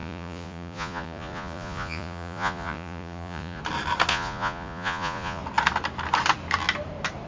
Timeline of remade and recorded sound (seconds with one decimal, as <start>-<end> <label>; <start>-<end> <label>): 0.0-3.6 remade; 3.6-4.1 recorded; 4.1-5.4 remade; 5.4-7.3 recorded